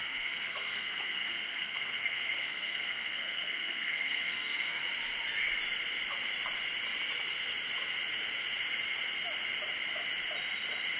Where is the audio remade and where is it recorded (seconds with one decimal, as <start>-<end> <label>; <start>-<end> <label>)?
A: 0.0-4.8 remade; 4.8-11.0 recorded